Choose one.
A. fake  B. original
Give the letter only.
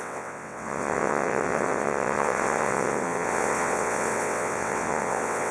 A